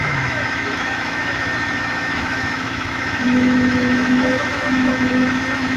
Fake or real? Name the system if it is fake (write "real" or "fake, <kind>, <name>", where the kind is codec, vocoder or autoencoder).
fake, autoencoder, DAC-VAE